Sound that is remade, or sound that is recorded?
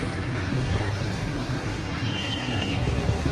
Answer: remade